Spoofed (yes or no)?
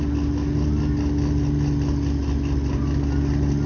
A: no